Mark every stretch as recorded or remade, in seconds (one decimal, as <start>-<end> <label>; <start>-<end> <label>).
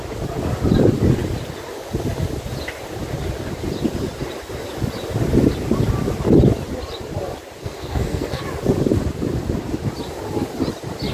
0.0-7.6 recorded; 7.6-8.4 remade; 8.4-11.1 recorded